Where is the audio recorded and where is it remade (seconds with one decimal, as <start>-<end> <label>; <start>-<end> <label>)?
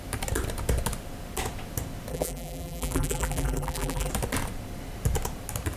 0.0-2.1 recorded; 2.1-4.1 remade; 4.1-5.8 recorded